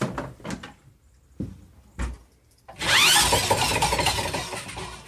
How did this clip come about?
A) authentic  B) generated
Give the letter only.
A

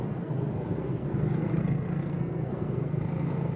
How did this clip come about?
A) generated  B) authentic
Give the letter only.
A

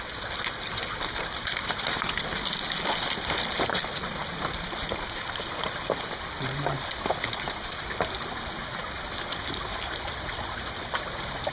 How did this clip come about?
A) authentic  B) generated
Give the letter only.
A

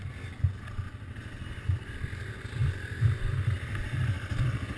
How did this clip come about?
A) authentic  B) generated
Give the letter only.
A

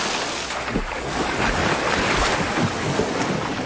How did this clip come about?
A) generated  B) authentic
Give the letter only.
B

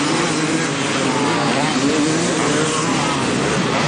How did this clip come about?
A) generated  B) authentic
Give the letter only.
B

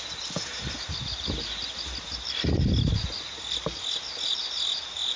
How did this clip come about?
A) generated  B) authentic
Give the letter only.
B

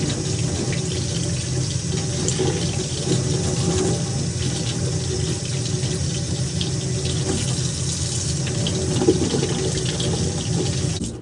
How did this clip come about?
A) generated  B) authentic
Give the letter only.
B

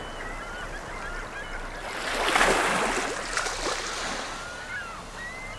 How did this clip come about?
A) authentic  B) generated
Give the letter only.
A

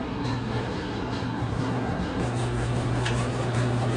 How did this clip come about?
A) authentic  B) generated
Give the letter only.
B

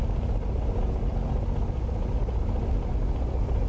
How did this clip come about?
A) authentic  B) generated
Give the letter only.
A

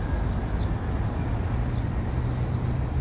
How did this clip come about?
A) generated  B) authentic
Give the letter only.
B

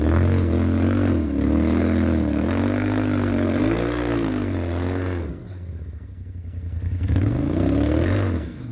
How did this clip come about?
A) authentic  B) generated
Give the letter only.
B